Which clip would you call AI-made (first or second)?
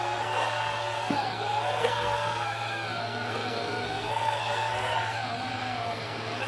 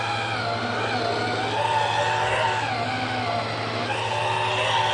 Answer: first